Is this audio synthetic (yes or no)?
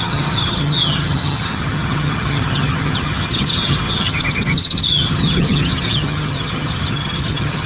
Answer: yes